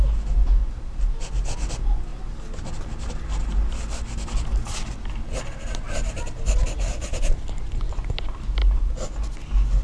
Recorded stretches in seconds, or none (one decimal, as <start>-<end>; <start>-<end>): 0.0-0.6; 1.2-8.6; 9.1-9.8